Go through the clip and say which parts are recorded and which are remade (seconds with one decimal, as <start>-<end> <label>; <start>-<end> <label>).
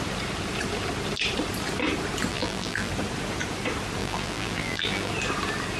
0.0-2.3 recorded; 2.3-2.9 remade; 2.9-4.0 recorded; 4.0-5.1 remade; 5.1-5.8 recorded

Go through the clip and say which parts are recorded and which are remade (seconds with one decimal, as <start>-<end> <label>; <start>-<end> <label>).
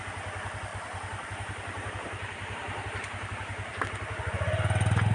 0.0-0.7 recorded; 0.7-3.8 remade; 3.8-5.1 recorded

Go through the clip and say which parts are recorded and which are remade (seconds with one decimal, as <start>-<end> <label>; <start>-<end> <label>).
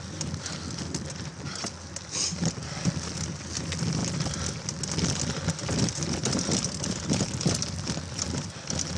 0.0-4.0 recorded; 4.0-4.8 remade; 4.8-9.0 recorded